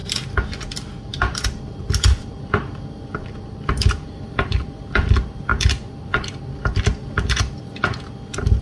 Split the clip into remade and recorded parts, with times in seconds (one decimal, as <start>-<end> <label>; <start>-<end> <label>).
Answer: 0.0-0.5 recorded; 0.5-5.5 remade; 5.5-7.6 recorded; 7.6-8.6 remade